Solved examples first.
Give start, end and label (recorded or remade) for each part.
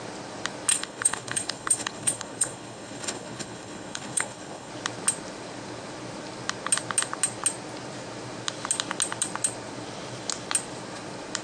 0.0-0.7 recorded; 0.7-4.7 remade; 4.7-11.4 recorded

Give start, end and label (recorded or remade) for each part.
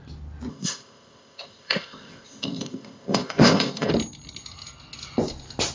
0.0-0.5 recorded; 0.5-3.9 remade; 3.9-5.7 recorded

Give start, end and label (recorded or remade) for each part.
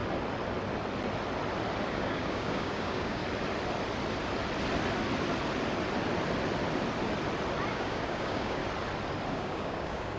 0.0-1.9 recorded; 1.9-3.2 remade; 3.2-7.7 recorded; 7.7-8.6 remade; 8.6-9.3 recorded; 9.3-10.2 remade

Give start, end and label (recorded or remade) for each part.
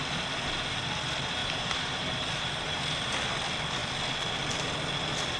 0.0-1.4 recorded; 1.4-2.8 remade; 2.8-5.4 recorded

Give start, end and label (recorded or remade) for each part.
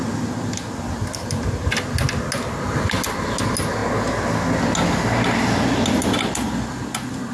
0.0-7.3 recorded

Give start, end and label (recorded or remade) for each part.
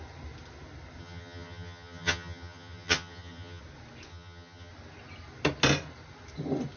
0.0-1.0 recorded; 1.0-3.6 remade; 3.6-4.1 recorded; 4.1-4.7 remade; 4.7-6.8 recorded